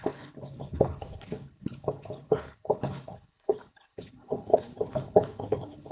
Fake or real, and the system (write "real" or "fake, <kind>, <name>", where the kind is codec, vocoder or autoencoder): fake, codec, HILCodec